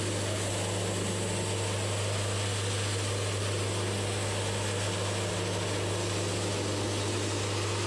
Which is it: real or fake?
real